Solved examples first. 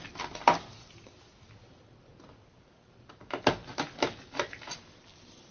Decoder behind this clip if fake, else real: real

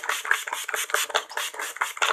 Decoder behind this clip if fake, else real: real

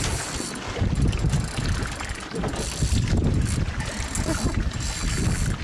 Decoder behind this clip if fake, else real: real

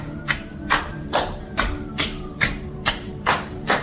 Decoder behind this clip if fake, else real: fake, vocoder, BigVGAN v2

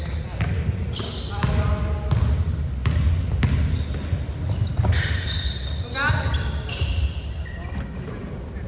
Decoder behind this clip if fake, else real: real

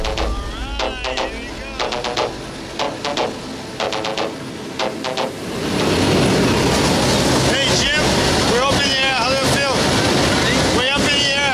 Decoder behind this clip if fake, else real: real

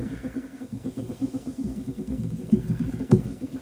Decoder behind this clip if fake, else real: fake, codec, SNAC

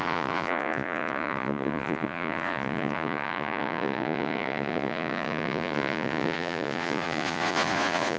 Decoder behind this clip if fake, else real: fake, vocoder, Vocos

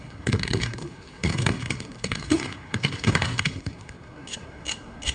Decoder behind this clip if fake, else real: fake, codec, SNAC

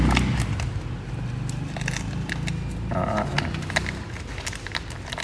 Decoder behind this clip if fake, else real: real